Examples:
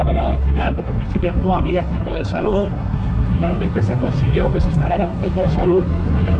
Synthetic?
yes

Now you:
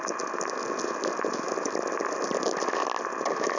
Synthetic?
no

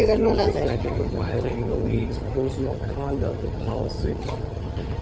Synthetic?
yes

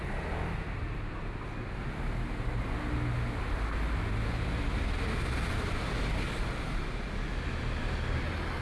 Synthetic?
no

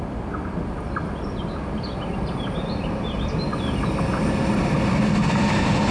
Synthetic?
no